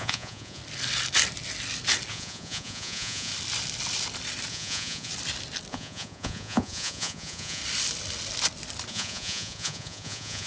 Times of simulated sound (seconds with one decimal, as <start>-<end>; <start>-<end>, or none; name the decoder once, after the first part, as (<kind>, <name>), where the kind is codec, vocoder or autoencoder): 0.0-0.6 (vocoder, Vocos); 2.1-3.3; 4.5-5.1; 5.7-7.6; 8.9-10.5